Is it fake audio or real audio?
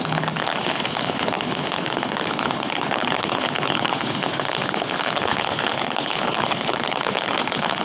fake